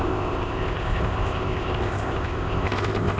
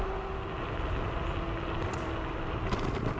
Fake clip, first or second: first